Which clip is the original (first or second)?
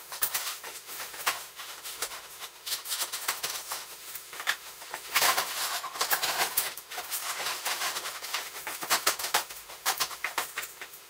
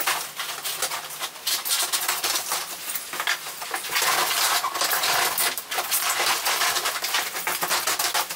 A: second